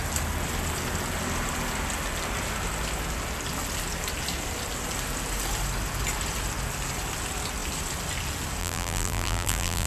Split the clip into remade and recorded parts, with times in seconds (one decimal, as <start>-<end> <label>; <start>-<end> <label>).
0.0-8.6 recorded; 8.6-9.9 remade